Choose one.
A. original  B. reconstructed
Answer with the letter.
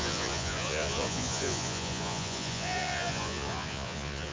B